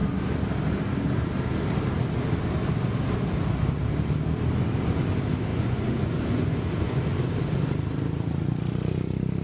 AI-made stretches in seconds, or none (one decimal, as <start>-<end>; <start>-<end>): 5.5-7.0